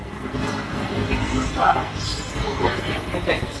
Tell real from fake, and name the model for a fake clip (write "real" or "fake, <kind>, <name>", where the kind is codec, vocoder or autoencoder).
fake, codec, SNAC